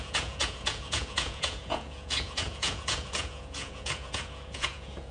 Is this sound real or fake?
fake